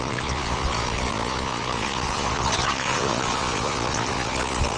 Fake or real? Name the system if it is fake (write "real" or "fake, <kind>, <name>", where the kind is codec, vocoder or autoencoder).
fake, vocoder, Vocos